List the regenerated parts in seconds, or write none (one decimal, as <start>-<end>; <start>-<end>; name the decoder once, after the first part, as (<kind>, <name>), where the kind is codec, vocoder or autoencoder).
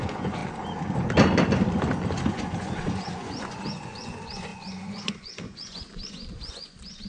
0.0-0.4 (vocoder, Vocos); 2.3-7.1